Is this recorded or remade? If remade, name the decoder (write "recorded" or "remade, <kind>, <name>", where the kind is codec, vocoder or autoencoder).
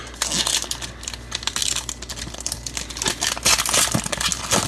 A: recorded